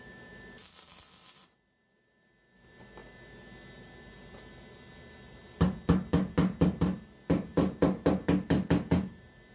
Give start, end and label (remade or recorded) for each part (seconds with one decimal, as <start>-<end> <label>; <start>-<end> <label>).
0.0-9.5 recorded